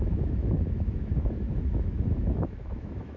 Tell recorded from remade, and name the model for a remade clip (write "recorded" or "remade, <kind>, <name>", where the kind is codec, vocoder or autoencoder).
remade, autoencoder, DAC-VAE